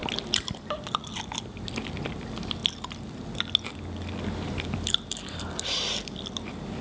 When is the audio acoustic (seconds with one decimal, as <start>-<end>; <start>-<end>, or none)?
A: 0.0-6.8